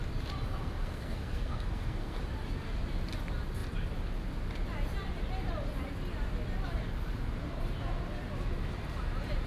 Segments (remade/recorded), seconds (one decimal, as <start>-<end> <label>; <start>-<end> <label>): 0.0-0.5 recorded; 0.5-2.2 remade; 2.2-9.5 recorded